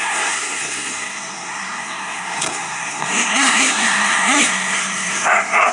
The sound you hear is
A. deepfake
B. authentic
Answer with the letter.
A